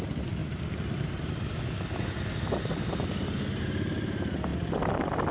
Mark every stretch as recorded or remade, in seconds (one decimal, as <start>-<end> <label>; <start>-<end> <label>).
0.0-5.3 recorded